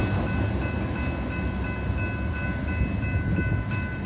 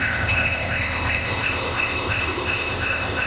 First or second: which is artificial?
second